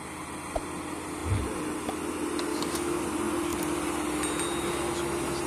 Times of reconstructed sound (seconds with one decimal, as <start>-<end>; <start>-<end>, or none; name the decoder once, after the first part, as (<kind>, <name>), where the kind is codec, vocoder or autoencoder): 2.5-3.0 (codec, DAC)